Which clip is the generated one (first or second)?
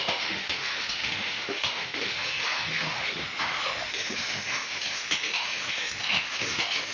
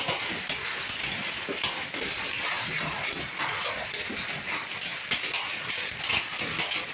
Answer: first